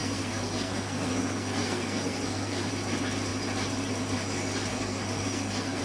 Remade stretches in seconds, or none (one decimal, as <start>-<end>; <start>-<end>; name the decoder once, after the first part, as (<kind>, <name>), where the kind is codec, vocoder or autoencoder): 0.0-2.7 (codec, SNAC); 4.7-5.8